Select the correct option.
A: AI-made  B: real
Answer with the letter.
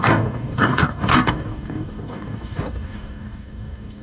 A